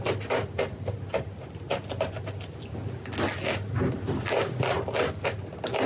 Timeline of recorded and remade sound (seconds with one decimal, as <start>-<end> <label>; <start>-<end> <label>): 0.0-5.9 recorded